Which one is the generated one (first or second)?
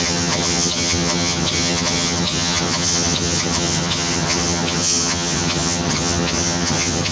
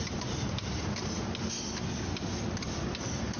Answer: first